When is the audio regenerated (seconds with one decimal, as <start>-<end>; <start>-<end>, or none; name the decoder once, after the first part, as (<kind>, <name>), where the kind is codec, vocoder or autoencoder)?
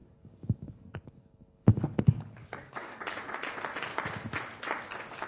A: 0.0-3.0 (codec, DAC)